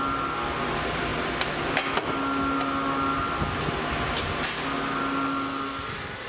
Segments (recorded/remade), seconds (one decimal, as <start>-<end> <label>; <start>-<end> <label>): 0.0-6.3 recorded